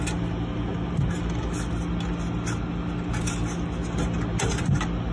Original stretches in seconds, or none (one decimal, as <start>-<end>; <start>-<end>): 0.0-5.1